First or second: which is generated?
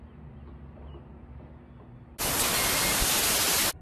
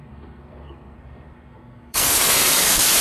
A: second